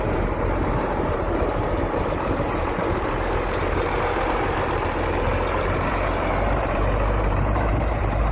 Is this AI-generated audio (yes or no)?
yes